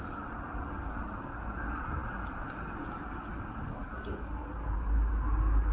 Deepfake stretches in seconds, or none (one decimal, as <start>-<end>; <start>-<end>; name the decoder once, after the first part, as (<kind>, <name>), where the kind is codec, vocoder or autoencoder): none